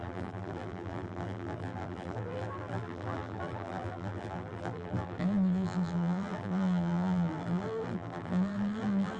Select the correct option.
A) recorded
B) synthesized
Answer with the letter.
B